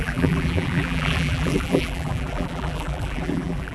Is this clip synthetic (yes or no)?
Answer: yes